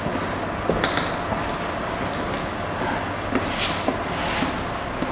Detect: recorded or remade recorded